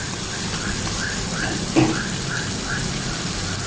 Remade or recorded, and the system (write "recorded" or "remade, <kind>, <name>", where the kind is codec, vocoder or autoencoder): recorded